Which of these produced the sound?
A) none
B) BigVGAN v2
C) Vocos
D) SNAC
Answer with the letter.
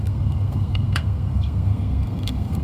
D